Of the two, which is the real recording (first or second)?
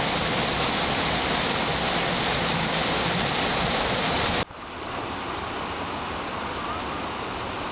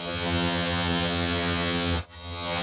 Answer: first